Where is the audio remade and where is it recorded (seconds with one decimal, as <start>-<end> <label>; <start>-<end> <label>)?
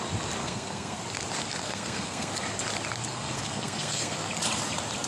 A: 0.0-0.4 recorded; 0.4-1.0 remade; 1.0-1.6 recorded; 1.6-2.3 remade; 2.3-3.1 recorded; 3.1-4.3 remade; 4.3-5.1 recorded